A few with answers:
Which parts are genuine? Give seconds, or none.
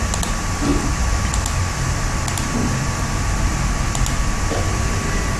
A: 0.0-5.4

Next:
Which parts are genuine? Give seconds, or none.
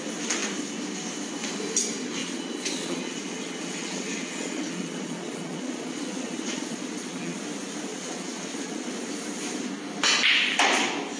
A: 0.0-2.2; 7.4-7.9; 8.9-11.2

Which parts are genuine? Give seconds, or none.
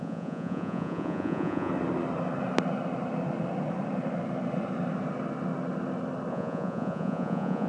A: 1.7-6.3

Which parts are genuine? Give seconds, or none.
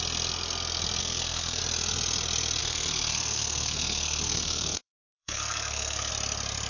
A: 0.0-1.0; 1.6-2.6; 6.1-6.7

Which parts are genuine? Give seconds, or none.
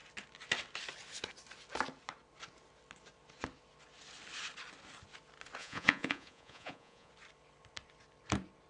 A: 0.0-5.6; 7.1-8.7